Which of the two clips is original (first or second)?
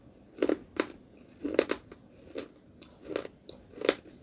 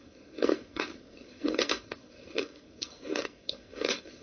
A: first